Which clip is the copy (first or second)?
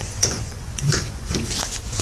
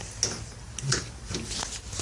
first